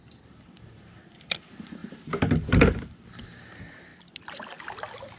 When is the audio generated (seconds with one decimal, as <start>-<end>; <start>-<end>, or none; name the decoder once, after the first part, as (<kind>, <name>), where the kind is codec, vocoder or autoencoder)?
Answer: 0.0-3.9 (vocoder, BigVGAN v2)